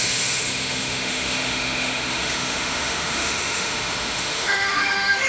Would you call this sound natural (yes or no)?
no